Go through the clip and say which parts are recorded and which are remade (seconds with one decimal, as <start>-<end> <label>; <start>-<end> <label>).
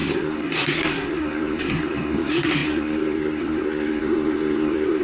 0.0-5.0 remade